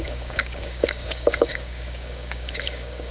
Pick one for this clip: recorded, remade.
remade